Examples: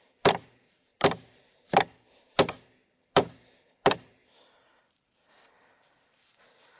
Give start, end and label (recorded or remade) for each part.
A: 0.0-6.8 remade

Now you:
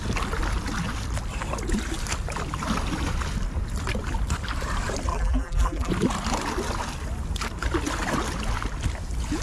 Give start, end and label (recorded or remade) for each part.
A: 0.0-5.1 recorded; 5.1-5.9 remade; 5.9-9.4 recorded

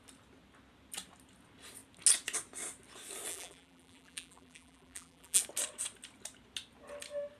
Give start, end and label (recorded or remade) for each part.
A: 0.0-3.3 recorded; 3.3-5.4 remade; 5.4-7.4 recorded

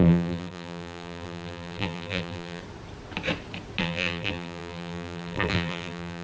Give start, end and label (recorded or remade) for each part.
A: 0.0-2.6 remade; 2.6-3.8 recorded; 3.8-6.2 remade